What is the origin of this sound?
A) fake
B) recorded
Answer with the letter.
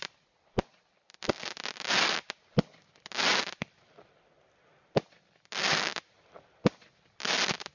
B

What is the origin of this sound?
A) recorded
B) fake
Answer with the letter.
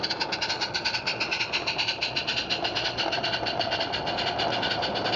A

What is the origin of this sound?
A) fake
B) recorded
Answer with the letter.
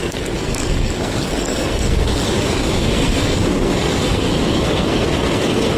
A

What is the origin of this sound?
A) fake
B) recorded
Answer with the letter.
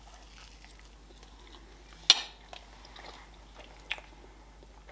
B